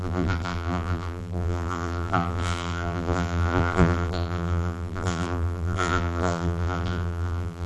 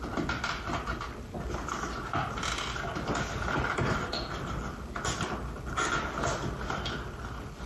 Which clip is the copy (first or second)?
first